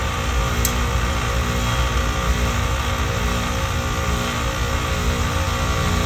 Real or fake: real